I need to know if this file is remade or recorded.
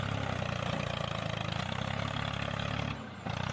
recorded